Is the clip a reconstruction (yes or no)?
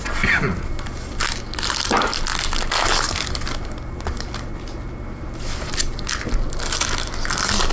no